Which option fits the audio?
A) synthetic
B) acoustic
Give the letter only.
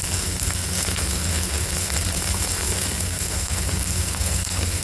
A